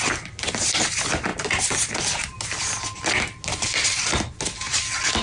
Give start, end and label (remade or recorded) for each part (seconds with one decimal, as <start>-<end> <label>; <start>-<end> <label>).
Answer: 0.0-5.2 recorded